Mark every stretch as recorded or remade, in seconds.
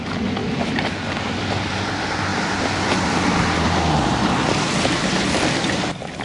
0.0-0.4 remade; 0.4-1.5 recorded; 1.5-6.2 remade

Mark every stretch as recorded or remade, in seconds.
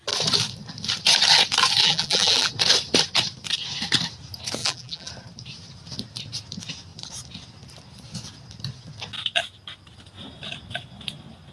0.0-1.8 recorded; 1.8-2.5 remade; 2.5-4.6 recorded; 4.6-5.1 remade; 5.1-11.5 recorded